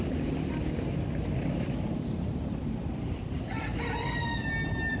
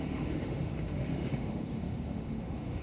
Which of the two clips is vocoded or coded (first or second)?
second